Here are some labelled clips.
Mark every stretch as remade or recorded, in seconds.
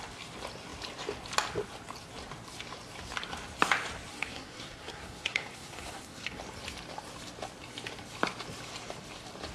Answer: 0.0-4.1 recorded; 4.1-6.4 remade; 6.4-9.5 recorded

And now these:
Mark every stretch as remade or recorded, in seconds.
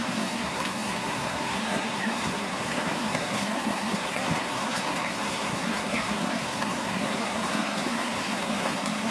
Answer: 0.0-9.1 remade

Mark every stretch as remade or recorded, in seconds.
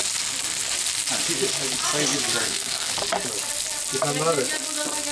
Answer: 0.0-2.4 recorded; 2.4-2.9 remade; 2.9-5.1 recorded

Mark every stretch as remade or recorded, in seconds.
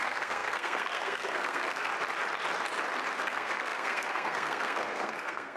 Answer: 0.0-1.9 remade; 1.9-3.1 recorded; 3.1-5.6 remade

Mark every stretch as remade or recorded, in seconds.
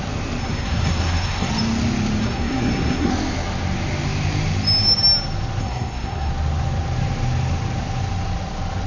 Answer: 0.0-0.4 recorded; 0.4-1.5 remade; 1.5-2.2 recorded; 2.2-3.1 remade; 3.1-5.6 recorded; 5.6-6.3 remade; 6.3-8.9 recorded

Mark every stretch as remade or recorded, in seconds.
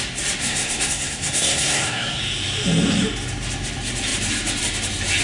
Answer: 0.0-0.4 recorded; 0.4-2.2 remade; 2.2-5.2 recorded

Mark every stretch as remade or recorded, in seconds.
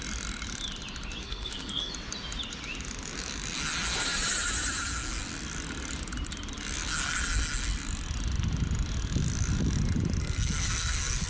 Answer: 0.0-1.2 recorded; 1.2-1.9 remade; 1.9-10.2 recorded; 10.2-11.3 remade